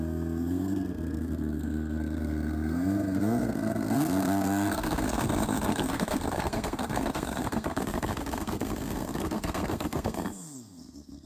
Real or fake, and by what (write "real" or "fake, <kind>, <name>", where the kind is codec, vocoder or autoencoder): fake, codec, SNAC